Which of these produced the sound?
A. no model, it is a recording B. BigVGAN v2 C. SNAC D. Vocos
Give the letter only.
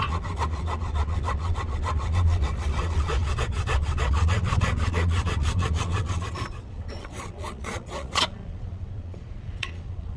D